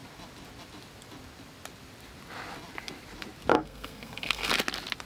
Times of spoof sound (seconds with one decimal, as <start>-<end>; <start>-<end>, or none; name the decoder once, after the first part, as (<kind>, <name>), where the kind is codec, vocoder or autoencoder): 3.5-4.5 (codec, SNAC)